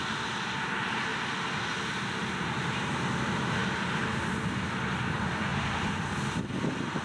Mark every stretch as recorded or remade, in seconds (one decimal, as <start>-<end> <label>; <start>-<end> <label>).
0.0-7.0 recorded